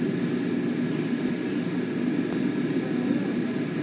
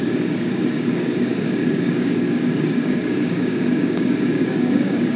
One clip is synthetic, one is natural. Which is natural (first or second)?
first